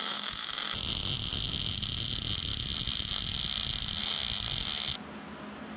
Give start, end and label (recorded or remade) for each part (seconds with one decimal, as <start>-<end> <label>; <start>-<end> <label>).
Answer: 0.0-0.5 remade; 0.5-5.8 recorded